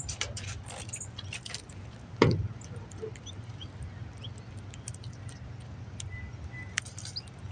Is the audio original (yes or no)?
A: yes